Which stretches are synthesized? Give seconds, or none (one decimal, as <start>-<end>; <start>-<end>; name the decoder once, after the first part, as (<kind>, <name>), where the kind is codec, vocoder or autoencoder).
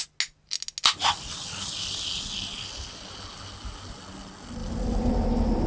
4.6-5.1 (vocoder, BigVGAN v2)